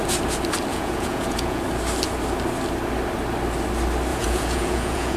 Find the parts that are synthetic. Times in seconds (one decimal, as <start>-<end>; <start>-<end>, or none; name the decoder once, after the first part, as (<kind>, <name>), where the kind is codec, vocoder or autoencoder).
0.7-1.6 (vocoder, Vocos); 4.1-5.2